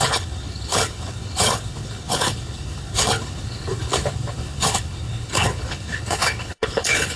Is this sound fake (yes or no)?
yes